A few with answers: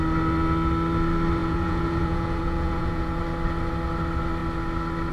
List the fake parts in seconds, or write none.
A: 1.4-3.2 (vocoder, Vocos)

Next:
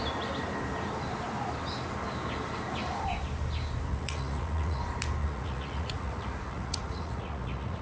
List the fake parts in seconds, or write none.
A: 3.9-4.8 (vocoder, Vocos); 5.2-7.8

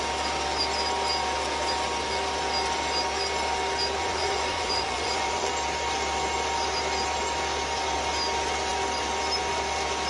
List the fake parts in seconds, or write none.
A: 4.0-5.5 (vocoder, Vocos)

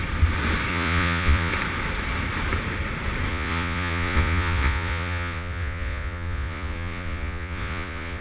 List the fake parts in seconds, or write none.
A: 0.7-1.5 (vocoder, Vocos); 3.3-8.2